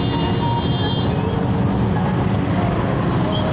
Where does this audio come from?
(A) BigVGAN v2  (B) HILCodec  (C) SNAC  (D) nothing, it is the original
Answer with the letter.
D